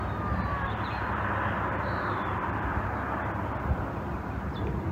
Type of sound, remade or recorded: recorded